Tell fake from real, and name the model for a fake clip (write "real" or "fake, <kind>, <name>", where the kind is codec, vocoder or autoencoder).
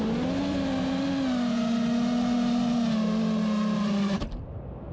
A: real